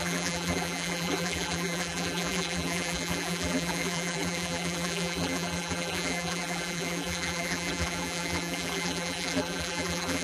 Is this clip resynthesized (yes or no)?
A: yes